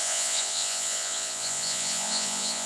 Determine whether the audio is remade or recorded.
remade